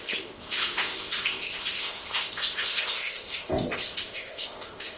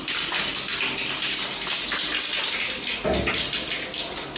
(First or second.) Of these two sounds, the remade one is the first